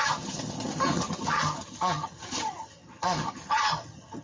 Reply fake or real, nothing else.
fake